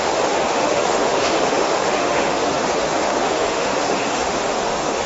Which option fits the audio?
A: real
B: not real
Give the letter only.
B